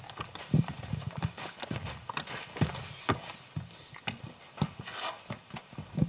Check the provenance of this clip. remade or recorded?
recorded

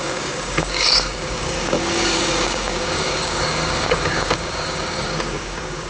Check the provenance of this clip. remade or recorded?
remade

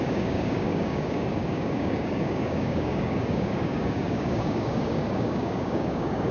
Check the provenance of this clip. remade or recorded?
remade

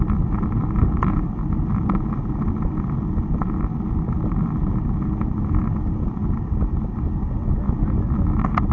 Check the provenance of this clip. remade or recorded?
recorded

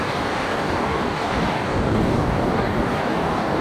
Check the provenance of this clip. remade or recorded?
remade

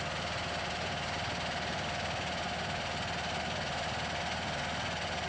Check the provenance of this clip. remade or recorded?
recorded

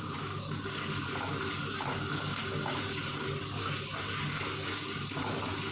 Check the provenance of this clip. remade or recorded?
remade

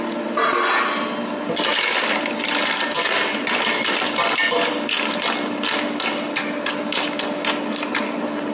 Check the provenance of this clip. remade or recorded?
recorded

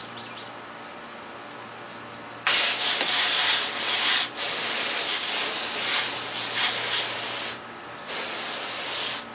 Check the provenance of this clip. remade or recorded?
recorded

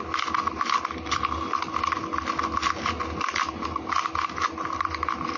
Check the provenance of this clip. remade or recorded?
recorded